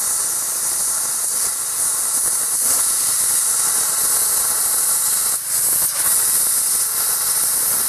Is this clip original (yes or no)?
yes